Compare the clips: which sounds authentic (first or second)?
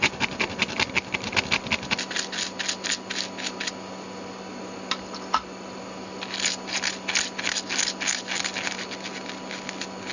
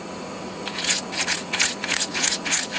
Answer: first